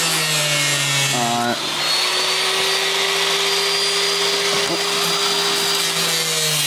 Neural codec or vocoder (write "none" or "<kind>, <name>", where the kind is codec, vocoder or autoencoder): none